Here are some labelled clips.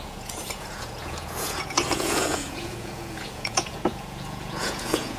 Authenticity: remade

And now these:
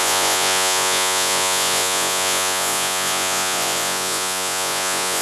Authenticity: remade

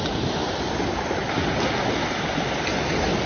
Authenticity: recorded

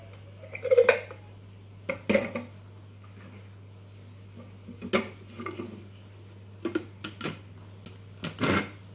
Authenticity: recorded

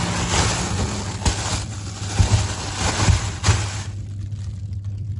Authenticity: recorded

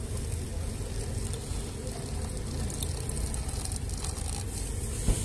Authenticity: recorded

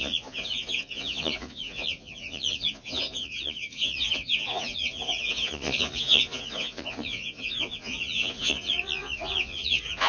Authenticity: remade